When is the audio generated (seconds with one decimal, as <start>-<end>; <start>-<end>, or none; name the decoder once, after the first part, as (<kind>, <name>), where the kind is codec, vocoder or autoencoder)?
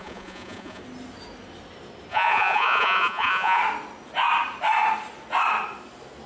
0.0-0.8 (vocoder, Vocos); 2.1-3.6